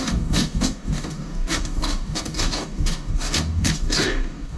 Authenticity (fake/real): fake